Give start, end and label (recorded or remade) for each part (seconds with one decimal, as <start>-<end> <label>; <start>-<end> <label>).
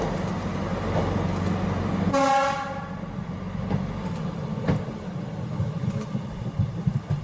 0.0-7.2 recorded